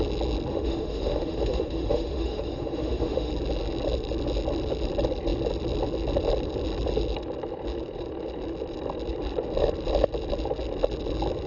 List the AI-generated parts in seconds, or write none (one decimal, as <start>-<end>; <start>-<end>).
0.5-3.3